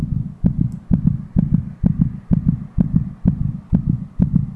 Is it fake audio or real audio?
real